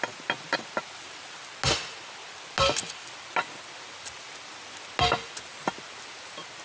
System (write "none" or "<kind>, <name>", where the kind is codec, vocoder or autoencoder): none